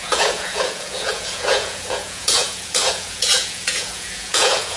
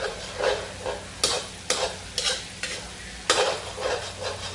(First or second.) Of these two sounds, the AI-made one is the first